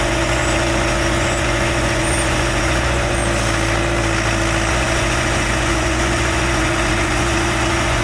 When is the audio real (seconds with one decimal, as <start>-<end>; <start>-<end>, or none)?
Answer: 3.2-4.7